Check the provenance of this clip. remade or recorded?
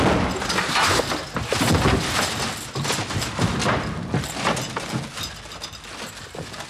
recorded